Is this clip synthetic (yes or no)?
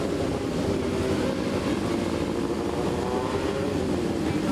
no